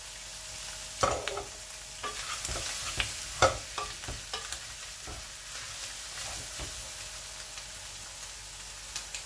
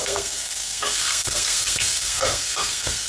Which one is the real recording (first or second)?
first